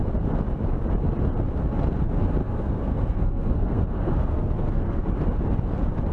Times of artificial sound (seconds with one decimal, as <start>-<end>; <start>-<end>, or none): 2.4-5.0

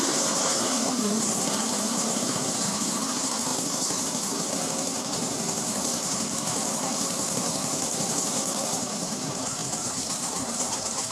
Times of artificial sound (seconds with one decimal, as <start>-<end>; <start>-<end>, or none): 0.0-11.1

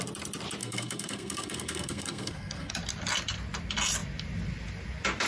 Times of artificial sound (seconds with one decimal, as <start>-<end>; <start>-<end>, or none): 0.6-2.7

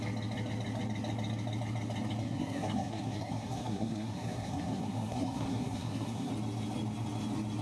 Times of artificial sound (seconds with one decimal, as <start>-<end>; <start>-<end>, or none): 2.2-6.3

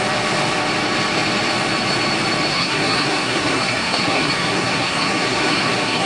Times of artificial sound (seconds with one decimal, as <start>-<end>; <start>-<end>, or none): 2.5-6.1

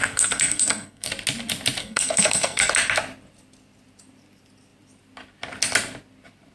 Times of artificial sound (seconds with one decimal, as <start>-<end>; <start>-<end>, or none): 0.0-1.1; 1.8-2.7

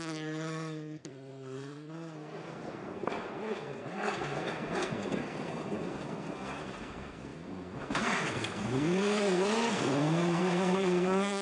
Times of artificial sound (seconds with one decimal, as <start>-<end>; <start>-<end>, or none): 0.0-11.4

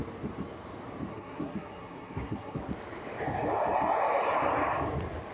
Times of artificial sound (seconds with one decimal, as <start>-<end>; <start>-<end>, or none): 1.1-2.6